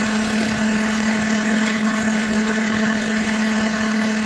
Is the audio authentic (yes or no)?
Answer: no